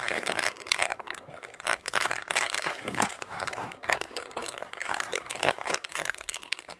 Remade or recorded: remade